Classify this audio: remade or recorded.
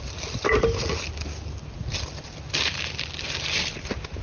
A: recorded